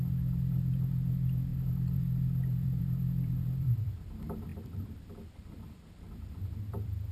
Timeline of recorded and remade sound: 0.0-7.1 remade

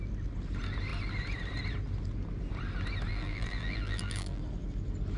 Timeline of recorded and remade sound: 0.0-3.1 recorded; 3.1-4.4 remade; 4.4-5.2 recorded

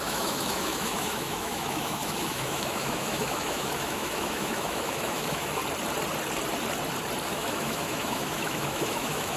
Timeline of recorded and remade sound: 0.0-5.6 remade; 5.6-7.3 recorded; 7.3-9.4 remade

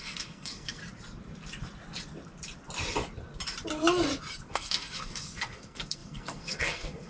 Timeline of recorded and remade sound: 0.0-0.8 remade; 0.8-4.5 recorded; 4.5-7.1 remade

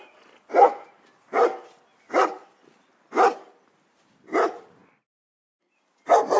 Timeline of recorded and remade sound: 0.0-6.4 recorded